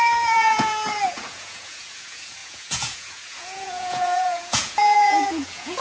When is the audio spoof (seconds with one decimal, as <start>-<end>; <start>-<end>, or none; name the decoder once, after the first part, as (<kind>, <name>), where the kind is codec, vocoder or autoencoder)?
0.0-5.8 (vocoder, Vocos)